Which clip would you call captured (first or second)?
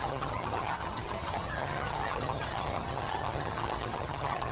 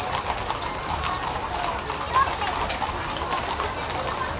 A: second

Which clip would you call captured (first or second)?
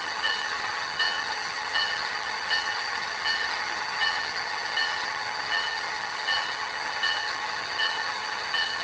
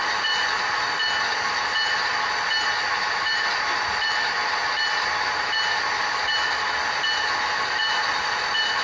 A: second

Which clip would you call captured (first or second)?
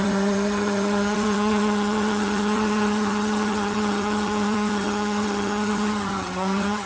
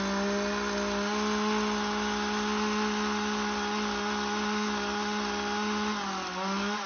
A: second